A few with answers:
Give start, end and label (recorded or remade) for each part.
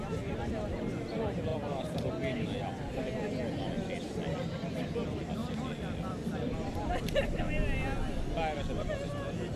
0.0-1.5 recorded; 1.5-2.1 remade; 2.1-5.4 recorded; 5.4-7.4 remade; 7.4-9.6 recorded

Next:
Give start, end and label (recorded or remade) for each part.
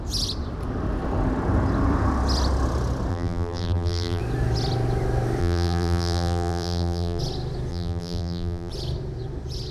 0.0-3.1 recorded; 3.1-4.2 remade; 4.2-5.4 recorded; 5.4-7.2 remade; 7.2-7.7 recorded; 7.7-8.7 remade; 8.7-9.7 recorded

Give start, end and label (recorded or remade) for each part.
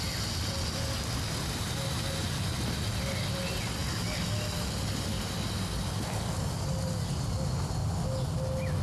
0.0-8.8 recorded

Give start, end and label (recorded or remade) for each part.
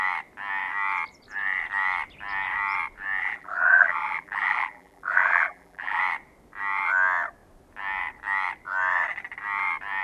0.0-3.2 recorded; 3.2-6.0 remade; 6.0-10.0 recorded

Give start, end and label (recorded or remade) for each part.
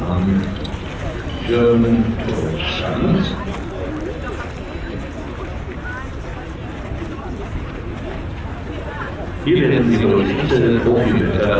0.0-6.3 recorded; 6.3-9.3 remade; 9.3-11.6 recorded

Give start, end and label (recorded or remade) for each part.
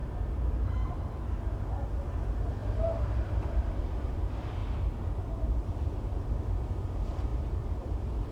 0.0-1.9 recorded; 1.9-4.6 remade; 4.6-5.1 recorded; 5.1-8.3 remade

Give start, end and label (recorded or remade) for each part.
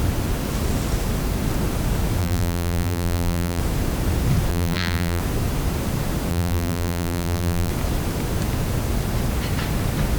0.0-2.2 recorded; 2.2-3.6 remade; 3.6-4.5 recorded; 4.5-5.2 remade; 5.2-6.3 recorded; 6.3-7.7 remade; 7.7-10.2 recorded